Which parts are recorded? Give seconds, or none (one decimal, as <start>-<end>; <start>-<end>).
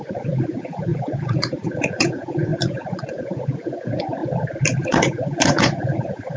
4.2-4.9